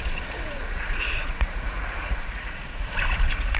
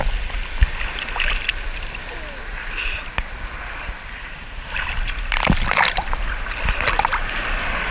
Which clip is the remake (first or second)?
first